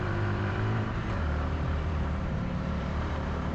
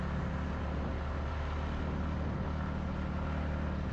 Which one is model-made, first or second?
first